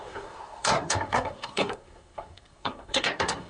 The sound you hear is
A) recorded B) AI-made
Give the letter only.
B